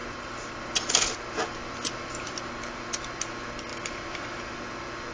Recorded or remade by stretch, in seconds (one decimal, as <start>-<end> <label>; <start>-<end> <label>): 0.0-2.5 remade; 2.5-3.7 recorded; 3.7-4.5 remade; 4.5-5.1 recorded